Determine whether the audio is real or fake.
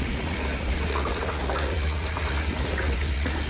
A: fake